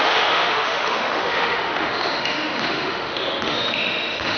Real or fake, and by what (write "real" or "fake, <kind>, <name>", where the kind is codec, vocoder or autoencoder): fake, autoencoder, DAC-VAE